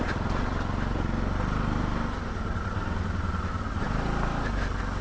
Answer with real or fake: real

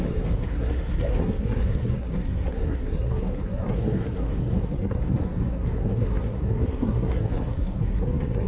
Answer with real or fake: fake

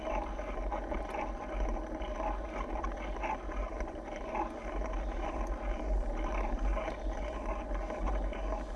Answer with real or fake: real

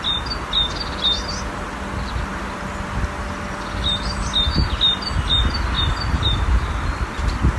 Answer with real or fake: real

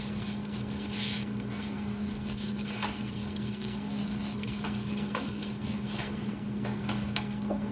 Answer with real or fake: fake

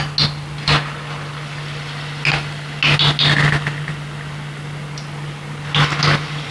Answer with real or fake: real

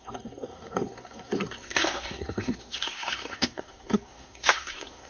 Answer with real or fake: fake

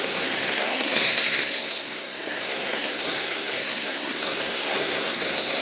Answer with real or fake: fake